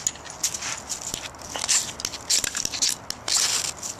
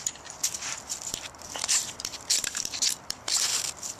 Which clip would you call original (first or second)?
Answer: first